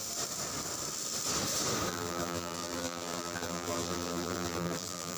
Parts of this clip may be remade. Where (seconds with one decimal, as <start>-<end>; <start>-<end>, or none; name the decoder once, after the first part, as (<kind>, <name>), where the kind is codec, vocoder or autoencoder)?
1.9-5.2 (vocoder, BigVGAN v2)